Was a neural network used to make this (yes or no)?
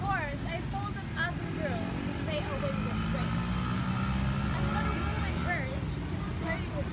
no